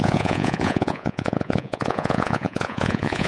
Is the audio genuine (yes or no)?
no